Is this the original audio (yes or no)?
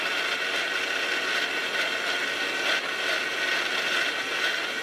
yes